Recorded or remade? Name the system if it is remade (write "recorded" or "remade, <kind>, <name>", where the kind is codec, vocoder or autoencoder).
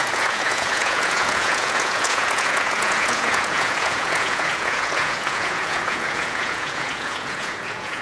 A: remade, vocoder, Vocos